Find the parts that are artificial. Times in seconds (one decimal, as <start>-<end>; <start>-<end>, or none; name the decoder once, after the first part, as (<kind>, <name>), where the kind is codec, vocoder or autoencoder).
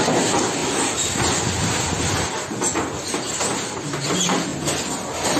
none